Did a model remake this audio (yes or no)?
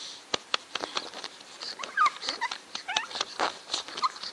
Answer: yes